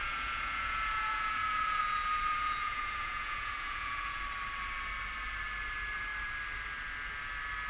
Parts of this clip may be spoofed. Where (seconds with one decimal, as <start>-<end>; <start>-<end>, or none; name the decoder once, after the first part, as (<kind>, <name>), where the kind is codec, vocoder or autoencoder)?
0.0-4.2 (vocoder, Vocos)